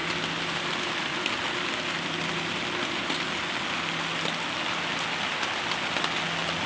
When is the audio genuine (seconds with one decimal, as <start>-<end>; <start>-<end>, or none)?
0.0-6.7